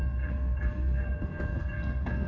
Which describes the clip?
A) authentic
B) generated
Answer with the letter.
B